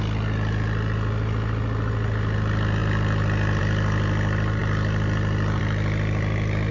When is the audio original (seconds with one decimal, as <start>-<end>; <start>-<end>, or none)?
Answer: 0.0-6.7